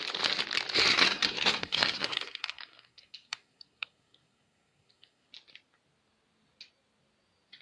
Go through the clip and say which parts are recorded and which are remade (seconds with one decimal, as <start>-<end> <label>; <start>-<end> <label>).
0.0-0.9 recorded; 0.9-5.3 remade; 5.3-7.6 recorded